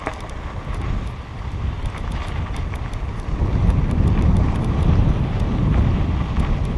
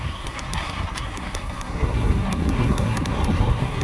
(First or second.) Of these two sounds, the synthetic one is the second